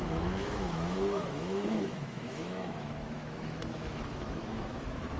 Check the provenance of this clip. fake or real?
fake